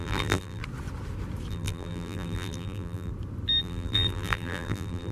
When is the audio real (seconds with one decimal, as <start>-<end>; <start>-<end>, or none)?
0.6-1.5; 3.1-3.6